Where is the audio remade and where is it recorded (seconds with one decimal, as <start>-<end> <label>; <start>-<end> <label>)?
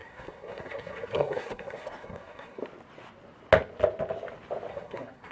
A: 0.0-2.6 remade; 2.6-4.7 recorded; 4.7-5.3 remade